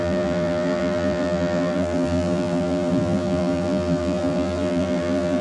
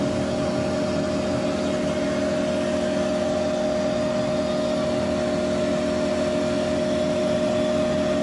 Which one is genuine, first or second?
second